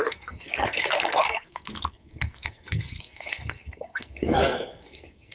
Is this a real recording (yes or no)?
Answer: no